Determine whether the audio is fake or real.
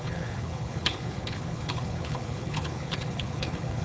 fake